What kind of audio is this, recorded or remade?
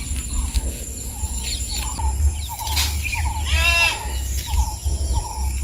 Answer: recorded